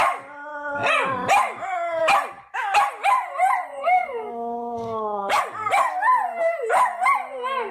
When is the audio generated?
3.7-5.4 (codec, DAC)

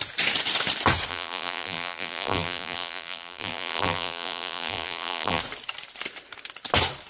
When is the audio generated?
1.1-5.4 (vocoder, BigVGAN v2)

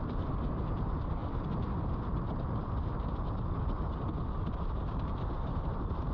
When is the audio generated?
none

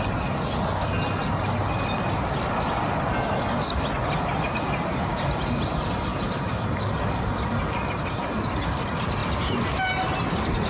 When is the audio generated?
6.1-6.8 (vocoder, BigVGAN v2)

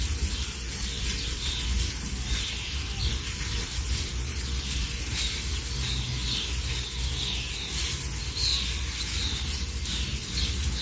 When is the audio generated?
none

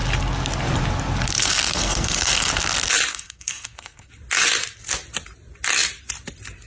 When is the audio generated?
1.7-2.5 (codec, SNAC); 3.1-4.1